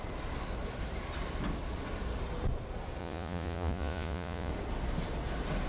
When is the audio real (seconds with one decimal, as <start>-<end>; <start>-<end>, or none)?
0.0-3.0; 4.5-5.7